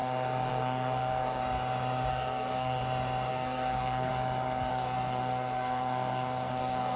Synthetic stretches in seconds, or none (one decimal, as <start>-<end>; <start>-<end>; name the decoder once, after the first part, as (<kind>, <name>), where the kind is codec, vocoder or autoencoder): 0.0-1.4 (codec, SNAC); 2.1-2.8; 3.3-4.1; 4.7-7.0